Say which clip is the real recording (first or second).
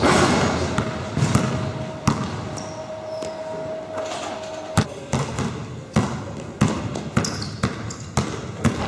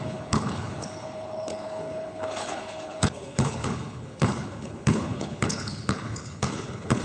first